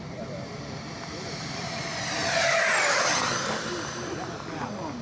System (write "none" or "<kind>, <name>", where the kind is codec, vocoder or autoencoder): none